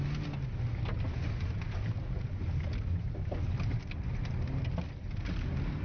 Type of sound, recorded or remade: recorded